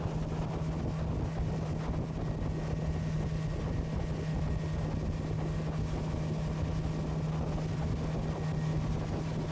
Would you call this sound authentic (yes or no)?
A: yes